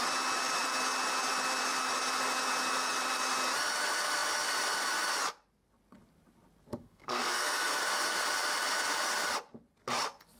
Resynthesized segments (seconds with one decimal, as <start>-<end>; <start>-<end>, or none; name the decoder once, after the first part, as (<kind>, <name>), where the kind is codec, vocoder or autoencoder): 6.8-7.8 (codec, SNAC)